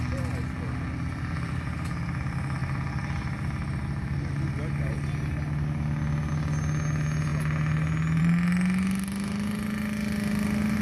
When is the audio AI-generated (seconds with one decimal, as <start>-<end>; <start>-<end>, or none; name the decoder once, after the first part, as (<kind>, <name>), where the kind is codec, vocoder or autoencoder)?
none

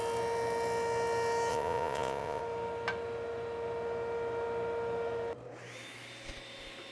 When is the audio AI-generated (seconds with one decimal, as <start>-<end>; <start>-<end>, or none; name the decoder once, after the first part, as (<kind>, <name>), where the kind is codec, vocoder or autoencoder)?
1.5-2.4 (vocoder, Vocos)

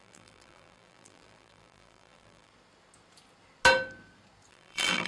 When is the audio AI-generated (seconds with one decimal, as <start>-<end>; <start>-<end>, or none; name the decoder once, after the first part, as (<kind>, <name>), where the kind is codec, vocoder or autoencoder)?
0.0-2.5 (vocoder, BigVGAN v2); 4.5-5.1

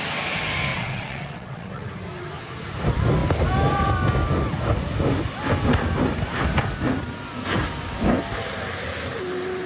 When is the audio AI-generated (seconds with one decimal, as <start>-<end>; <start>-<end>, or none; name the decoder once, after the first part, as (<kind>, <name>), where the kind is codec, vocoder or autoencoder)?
0.7-1.9 (vocoder, WaveNeXt)

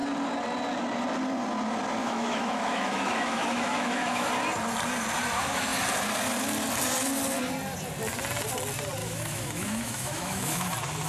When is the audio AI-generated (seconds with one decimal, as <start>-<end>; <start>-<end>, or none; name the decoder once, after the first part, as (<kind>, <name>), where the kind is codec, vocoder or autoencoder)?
2.0-4.3 (autoencoder, DAC-VAE); 9.0-10.7

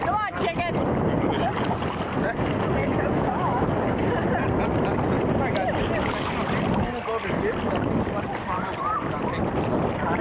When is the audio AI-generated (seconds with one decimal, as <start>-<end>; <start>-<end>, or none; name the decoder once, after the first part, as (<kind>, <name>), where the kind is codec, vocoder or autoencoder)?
2.8-3.7 (autoencoder, DAC-VAE)